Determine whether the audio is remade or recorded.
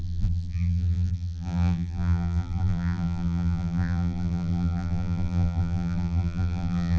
remade